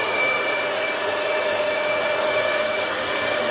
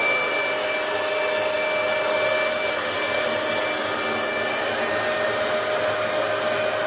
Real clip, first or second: second